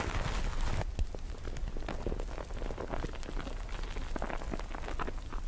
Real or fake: real